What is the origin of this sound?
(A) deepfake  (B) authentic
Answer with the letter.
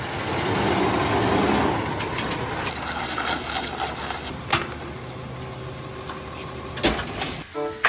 B